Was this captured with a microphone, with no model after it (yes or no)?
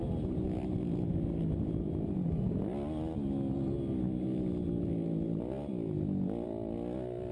yes